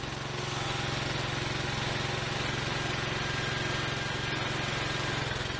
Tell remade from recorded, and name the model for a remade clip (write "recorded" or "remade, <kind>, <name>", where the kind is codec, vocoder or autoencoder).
recorded